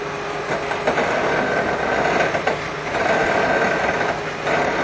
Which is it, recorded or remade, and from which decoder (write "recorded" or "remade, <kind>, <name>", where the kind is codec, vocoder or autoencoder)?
recorded